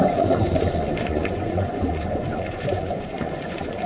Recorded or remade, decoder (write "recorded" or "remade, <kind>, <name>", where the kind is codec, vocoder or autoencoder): remade, vocoder, Vocos